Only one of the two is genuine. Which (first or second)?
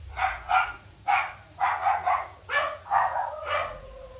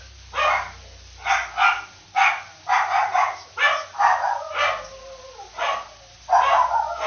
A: second